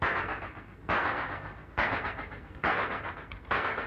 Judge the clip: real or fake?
fake